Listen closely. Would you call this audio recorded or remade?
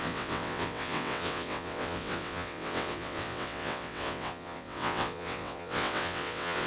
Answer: remade